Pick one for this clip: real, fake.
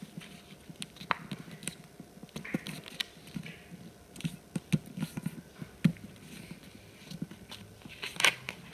real